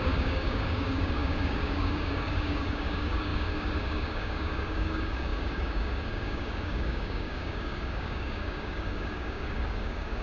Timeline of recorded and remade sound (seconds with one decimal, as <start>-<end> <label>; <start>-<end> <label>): 0.0-10.2 remade